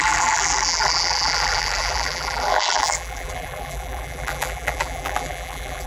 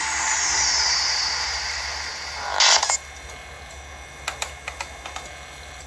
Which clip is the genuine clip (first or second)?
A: second